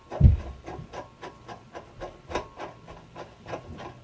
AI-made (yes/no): no